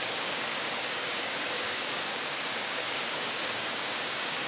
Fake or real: fake